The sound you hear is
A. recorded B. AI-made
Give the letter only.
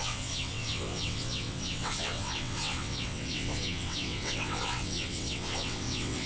B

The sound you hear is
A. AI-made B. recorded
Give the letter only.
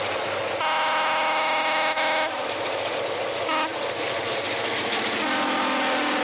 B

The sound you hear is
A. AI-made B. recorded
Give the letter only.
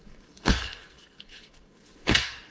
A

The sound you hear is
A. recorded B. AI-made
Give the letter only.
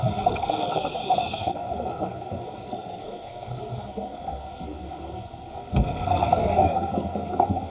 B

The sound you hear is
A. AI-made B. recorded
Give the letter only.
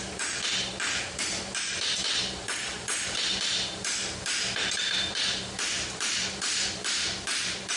A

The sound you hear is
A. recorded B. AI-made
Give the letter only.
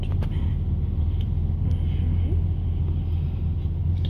A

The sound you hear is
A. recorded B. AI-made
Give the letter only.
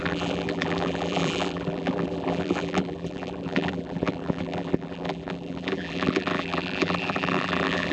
B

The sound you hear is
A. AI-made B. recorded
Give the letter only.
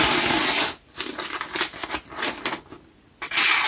B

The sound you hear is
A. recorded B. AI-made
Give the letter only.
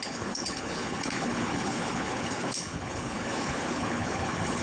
B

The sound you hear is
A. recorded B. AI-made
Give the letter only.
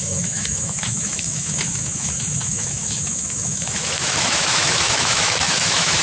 B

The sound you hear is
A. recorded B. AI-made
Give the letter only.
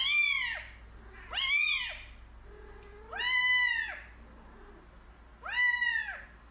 A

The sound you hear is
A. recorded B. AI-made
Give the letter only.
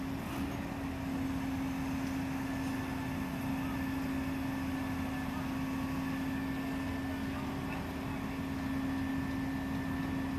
A